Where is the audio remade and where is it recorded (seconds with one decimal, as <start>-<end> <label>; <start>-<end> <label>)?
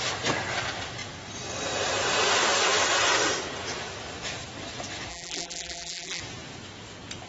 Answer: 0.0-5.1 recorded; 5.1-6.2 remade; 6.2-7.3 recorded